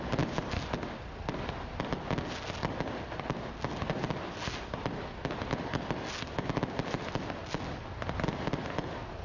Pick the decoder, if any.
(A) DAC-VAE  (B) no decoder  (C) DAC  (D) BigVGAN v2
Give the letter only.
B